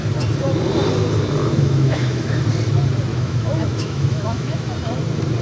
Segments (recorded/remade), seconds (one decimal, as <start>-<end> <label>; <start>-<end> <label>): 0.0-1.4 recorded; 1.4-2.4 remade; 2.4-3.1 recorded; 3.1-4.7 remade; 4.7-5.4 recorded